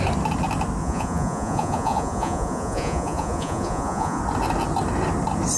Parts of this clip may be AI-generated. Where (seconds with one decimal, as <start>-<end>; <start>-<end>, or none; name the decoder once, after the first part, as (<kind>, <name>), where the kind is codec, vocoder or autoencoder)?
0.8-4.2 (vocoder, Vocos)